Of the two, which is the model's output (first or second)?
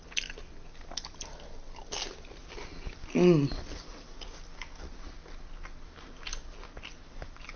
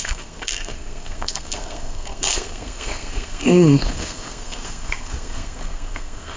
second